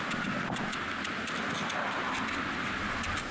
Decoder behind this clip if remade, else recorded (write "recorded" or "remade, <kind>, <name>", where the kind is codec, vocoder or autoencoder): recorded